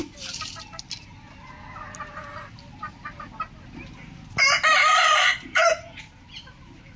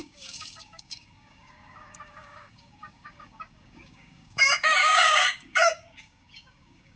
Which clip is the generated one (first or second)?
second